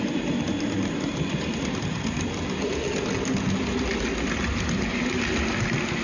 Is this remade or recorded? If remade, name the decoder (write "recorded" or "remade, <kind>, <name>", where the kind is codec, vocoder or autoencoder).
recorded